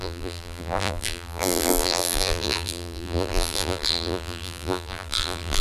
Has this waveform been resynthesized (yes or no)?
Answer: yes